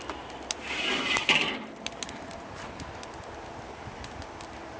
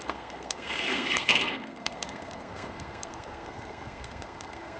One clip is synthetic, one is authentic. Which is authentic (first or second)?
first